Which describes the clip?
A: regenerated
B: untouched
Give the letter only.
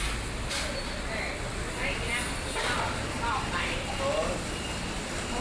B